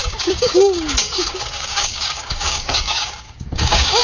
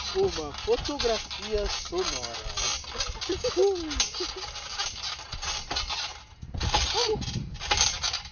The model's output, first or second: first